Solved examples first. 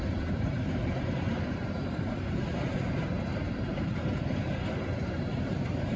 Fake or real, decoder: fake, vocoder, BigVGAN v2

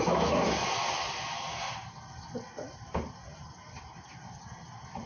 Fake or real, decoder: real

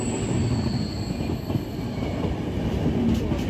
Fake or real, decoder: real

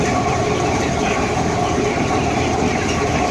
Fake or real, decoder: fake, vocoder, BigVGAN v2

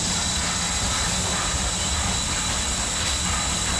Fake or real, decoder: real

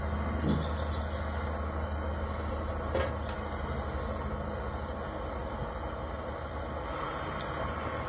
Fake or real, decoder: real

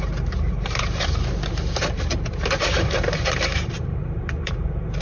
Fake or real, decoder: fake, vocoder, BigVGAN v2